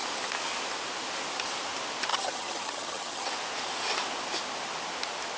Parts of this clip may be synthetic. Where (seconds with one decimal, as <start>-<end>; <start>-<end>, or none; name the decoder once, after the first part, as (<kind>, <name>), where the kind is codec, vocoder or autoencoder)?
2.1-3.3 (vocoder, HiFi-GAN)